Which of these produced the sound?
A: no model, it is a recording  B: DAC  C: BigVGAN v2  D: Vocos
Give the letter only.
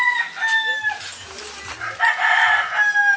A